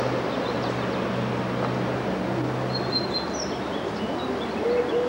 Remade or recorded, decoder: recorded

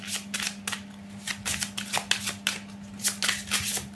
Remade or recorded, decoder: recorded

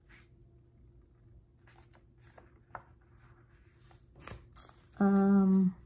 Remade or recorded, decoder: recorded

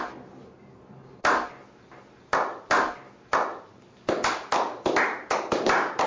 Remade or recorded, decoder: recorded